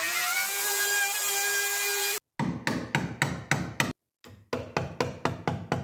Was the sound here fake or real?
real